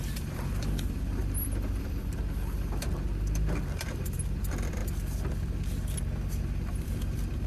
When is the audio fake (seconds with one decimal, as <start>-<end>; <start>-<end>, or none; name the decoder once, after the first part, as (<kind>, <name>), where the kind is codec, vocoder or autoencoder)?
0.0-4.8 (vocoder, BigVGAN v2); 6.3-7.5

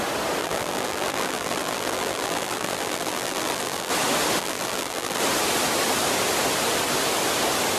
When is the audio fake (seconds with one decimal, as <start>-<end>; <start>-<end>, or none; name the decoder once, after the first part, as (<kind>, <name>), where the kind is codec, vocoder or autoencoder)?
0.4-3.9 (vocoder, BigVGAN v2); 4.4-5.2

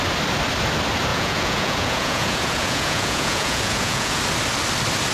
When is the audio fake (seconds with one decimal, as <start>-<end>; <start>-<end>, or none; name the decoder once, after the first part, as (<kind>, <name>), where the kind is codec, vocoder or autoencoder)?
1.1-4.2 (vocoder, Vocos)